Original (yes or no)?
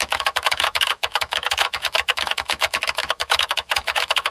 no